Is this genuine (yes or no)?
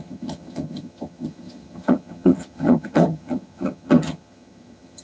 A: no